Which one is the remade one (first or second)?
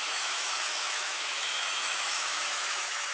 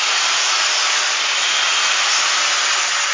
first